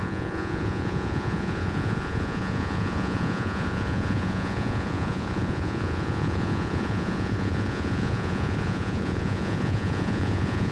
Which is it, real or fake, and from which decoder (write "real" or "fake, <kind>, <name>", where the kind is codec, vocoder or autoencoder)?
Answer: fake, vocoder, Vocos